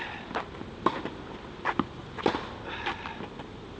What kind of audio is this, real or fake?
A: fake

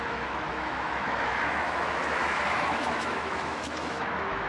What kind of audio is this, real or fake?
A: fake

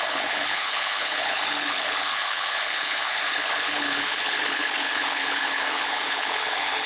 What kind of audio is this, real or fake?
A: fake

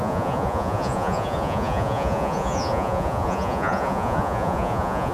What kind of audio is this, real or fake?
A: fake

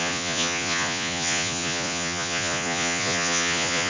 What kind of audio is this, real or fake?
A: fake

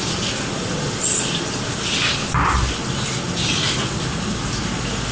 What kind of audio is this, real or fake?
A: real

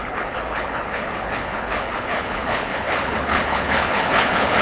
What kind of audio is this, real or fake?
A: fake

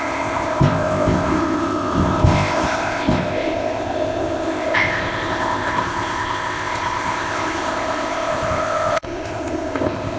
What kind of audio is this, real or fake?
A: fake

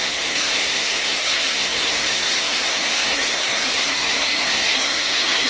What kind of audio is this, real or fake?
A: fake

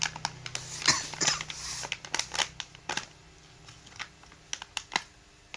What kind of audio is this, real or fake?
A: real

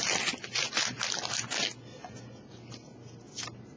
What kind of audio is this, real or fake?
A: real